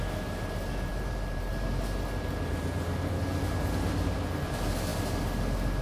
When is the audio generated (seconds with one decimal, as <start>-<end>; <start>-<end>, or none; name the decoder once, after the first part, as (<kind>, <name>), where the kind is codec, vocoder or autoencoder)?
0.9-1.5 (vocoder, BigVGAN v2)